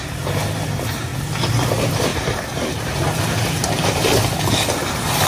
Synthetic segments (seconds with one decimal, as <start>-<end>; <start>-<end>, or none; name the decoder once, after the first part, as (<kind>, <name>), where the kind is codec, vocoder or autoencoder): 2.1-3.2 (vocoder, BigVGAN v2); 3.6-4.4